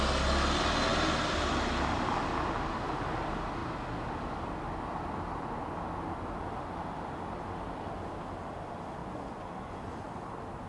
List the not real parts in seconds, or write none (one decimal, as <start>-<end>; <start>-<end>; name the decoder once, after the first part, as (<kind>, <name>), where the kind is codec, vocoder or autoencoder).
9.0-9.9 (vocoder, Vocos)